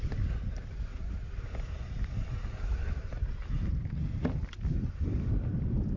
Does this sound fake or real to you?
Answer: real